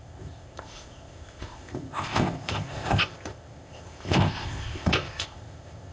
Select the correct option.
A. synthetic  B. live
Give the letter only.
A